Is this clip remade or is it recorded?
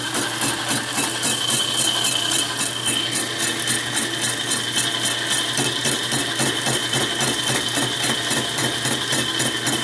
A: recorded